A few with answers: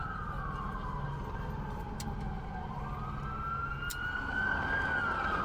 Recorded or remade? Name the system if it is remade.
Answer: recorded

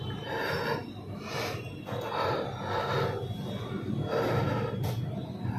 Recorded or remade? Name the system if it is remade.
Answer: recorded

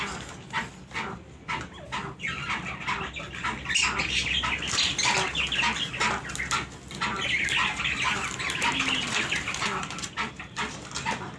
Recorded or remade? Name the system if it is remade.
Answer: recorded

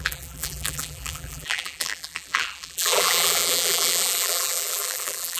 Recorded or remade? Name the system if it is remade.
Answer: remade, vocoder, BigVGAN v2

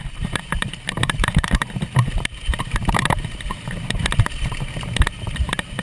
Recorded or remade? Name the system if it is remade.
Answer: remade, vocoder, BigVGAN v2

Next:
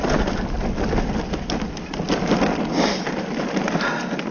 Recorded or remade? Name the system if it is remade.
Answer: recorded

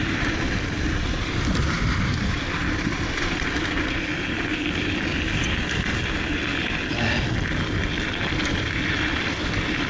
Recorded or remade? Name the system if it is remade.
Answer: recorded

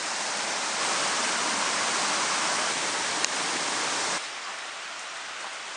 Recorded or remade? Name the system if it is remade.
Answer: remade, vocoder, BigVGAN v2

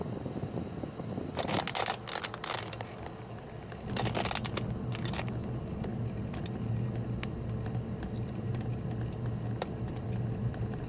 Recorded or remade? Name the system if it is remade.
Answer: recorded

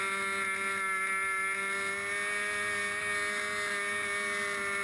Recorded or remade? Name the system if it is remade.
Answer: recorded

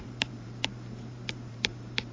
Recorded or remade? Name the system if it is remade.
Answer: remade, vocoder, BigVGAN v2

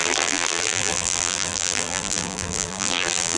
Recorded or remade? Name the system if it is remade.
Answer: remade, vocoder, BigVGAN v2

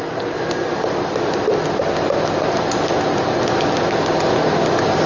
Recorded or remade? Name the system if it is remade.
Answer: recorded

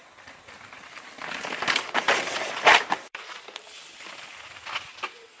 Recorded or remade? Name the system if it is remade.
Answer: remade, vocoder, BigVGAN v2